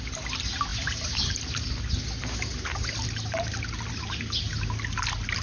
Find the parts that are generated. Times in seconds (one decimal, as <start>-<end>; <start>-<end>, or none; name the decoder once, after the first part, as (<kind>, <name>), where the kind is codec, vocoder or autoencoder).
none